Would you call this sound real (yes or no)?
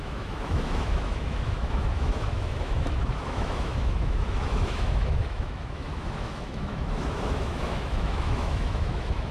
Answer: no